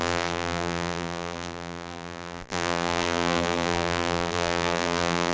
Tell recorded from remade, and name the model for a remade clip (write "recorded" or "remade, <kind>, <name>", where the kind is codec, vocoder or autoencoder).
remade, vocoder, BigVGAN v2